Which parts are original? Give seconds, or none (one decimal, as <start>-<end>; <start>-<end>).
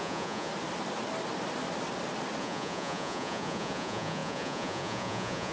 0.5-2.4